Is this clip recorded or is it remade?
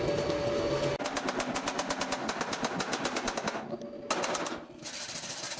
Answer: recorded